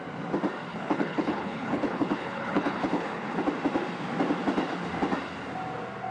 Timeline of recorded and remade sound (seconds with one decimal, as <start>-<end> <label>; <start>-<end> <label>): 0.0-0.7 recorded; 0.7-3.4 remade; 3.4-6.1 recorded